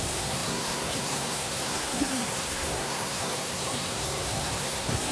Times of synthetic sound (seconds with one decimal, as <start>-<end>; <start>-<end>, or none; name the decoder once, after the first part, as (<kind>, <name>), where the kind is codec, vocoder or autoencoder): 0.0-5.1 (codec, SNAC)